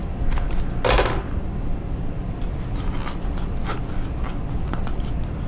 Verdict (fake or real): real